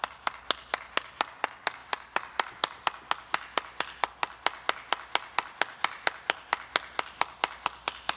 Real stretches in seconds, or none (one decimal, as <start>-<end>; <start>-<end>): 0.0-8.2